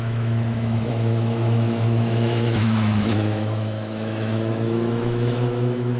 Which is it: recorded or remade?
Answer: remade